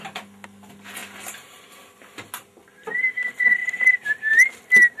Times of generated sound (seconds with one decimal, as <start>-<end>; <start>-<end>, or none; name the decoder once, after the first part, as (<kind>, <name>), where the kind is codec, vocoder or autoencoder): none